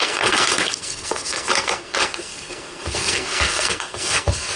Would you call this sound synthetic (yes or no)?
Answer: yes